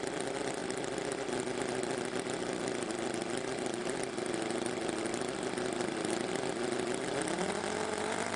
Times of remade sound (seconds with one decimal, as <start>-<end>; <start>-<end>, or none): none